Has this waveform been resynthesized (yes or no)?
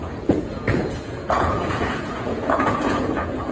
yes